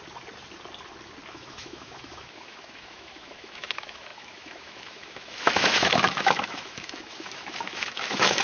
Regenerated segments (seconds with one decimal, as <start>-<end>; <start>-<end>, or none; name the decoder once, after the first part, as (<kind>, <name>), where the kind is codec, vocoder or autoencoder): 1.3-8.4 (autoencoder, DAC-VAE)